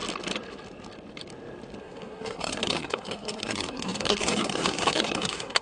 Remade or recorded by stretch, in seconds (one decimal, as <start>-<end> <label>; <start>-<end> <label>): 0.0-1.8 recorded; 1.8-5.6 remade